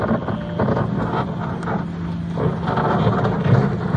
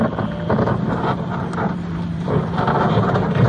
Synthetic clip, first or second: second